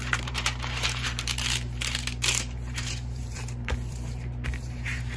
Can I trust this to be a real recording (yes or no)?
no